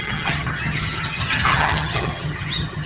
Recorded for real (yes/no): no